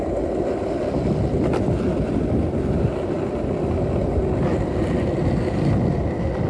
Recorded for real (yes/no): yes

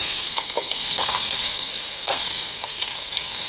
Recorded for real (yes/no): no